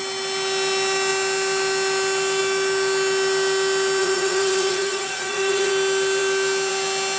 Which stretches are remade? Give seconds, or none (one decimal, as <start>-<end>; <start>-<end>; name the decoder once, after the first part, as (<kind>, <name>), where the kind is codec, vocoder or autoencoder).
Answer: 4.0-5.7 (vocoder, Vocos)